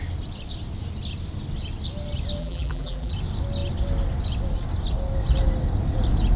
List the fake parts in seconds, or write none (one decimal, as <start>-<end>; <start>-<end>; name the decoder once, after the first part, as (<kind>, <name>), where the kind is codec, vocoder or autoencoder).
2.4-3.1 (vocoder, BigVGAN v2)